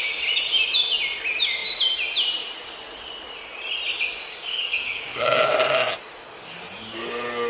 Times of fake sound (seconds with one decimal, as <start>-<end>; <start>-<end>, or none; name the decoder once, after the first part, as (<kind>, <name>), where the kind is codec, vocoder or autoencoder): 4.5-5.7 (codec, DAC)